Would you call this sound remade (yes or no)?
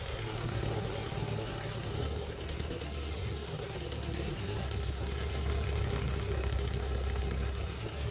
yes